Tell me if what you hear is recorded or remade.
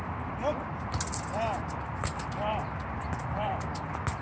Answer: recorded